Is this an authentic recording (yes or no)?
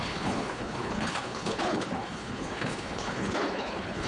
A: no